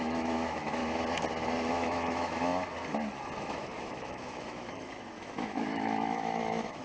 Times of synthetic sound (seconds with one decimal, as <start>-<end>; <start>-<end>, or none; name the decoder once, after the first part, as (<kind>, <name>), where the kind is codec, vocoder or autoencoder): 0.0-0.8 (autoencoder, DAC-VAE); 1.7-2.5; 3.4-6.8